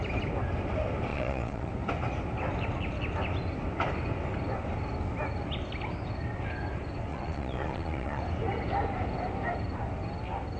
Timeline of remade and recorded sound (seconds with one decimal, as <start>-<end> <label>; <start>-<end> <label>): 0.0-1.1 recorded; 1.1-1.7 remade; 1.7-7.1 recorded; 7.1-8.2 remade; 8.2-10.6 recorded